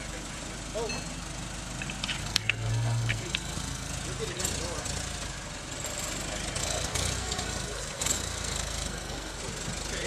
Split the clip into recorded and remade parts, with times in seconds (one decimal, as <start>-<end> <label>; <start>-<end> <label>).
0.0-2.2 recorded; 2.2-3.9 remade; 3.9-6.6 recorded; 6.6-9.4 remade; 9.4-10.1 recorded